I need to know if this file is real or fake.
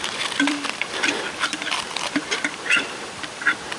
fake